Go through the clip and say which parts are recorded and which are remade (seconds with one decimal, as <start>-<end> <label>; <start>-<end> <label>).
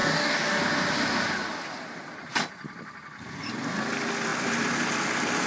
0.0-0.6 remade; 0.6-5.5 recorded